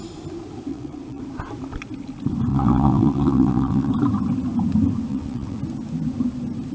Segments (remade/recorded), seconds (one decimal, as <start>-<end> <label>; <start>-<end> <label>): 0.0-0.7 recorded; 0.7-1.2 remade; 1.2-2.5 recorded; 2.5-3.9 remade; 3.9-5.1 recorded; 5.1-5.6 remade; 5.6-6.7 recorded